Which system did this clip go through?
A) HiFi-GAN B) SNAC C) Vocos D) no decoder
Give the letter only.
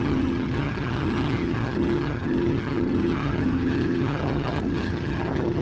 A